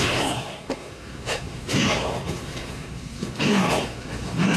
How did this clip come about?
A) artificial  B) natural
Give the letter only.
A